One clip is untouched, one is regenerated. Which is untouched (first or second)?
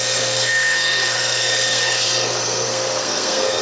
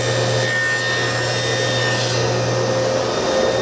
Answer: second